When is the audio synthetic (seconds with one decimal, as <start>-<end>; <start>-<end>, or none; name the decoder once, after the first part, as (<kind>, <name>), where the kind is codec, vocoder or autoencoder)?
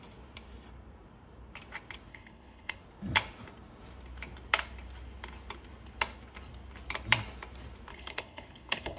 2.1-2.8 (codec, HILCodec); 7.9-9.0